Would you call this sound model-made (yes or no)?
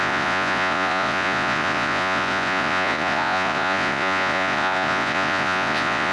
yes